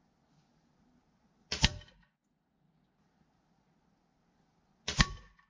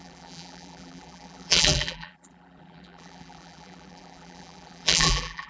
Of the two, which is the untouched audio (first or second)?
first